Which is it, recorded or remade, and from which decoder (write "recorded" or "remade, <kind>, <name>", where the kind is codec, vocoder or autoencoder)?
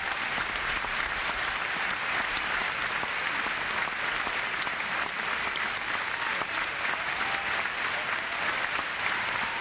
recorded